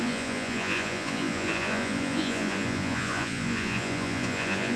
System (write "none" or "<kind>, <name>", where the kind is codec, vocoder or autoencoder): vocoder, Vocos